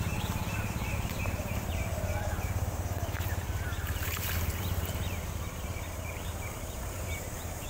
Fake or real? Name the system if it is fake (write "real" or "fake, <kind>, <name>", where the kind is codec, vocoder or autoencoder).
fake, vocoder, BigVGAN v2